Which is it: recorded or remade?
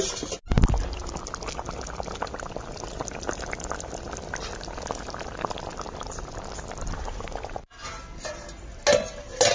recorded